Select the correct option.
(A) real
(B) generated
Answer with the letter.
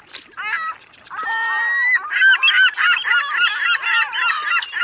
A